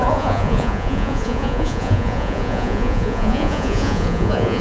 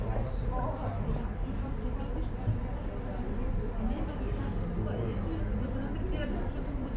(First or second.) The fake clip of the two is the first